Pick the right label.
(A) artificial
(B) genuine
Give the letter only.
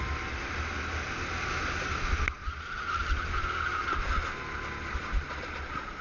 B